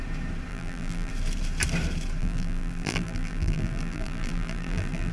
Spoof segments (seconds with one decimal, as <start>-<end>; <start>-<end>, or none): 0.5-1.1; 2.2-5.1